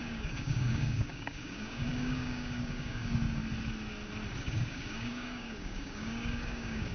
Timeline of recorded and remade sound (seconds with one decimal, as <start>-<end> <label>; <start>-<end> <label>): 0.0-3.4 remade; 3.4-4.4 recorded; 4.4-6.9 remade